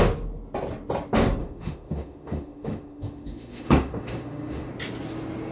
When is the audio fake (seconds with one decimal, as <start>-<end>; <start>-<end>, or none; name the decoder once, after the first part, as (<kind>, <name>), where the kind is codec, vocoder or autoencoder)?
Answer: 1.4-4.7 (autoencoder, DAC-VAE)

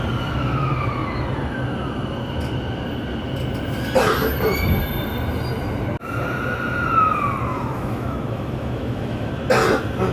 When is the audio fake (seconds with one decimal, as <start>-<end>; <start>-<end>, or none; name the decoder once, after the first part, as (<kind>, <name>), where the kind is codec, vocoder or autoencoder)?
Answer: 7.5-9.3 (autoencoder, DAC-VAE)

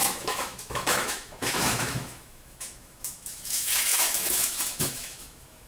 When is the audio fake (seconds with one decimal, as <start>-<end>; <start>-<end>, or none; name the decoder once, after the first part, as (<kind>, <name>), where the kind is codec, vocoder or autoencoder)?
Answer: 0.0-5.7 (autoencoder, DAC-VAE)

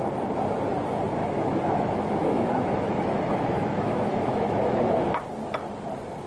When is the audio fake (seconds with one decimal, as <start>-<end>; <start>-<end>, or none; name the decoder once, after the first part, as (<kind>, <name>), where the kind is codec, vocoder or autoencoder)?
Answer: 1.2-5.0 (autoencoder, DAC-VAE)

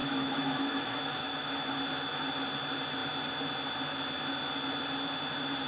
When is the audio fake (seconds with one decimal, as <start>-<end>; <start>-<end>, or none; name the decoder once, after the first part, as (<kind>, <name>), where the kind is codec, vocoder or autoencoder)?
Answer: 0.0-1.8 (autoencoder, DAC-VAE)

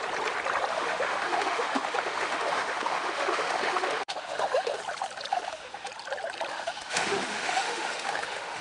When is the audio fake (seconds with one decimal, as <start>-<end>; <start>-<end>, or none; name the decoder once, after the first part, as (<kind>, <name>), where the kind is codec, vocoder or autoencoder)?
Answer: 0.7-4.8 (autoencoder, DAC-VAE); 5.3-5.9; 6.5-8.6

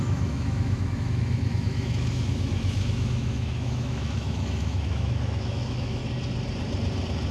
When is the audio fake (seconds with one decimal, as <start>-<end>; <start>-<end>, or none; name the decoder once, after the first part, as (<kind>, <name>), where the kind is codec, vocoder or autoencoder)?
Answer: 0.0-6.0 (autoencoder, DAC-VAE)